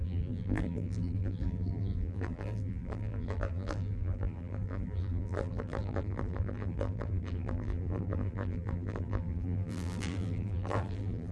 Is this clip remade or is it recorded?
remade